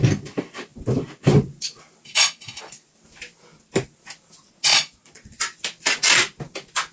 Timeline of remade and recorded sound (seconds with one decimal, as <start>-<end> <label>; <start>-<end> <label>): 0.0-4.7 recorded; 4.7-5.4 remade; 5.4-6.9 recorded